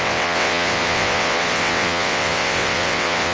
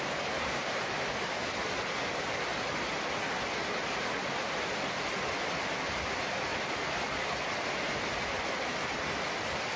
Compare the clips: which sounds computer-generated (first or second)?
first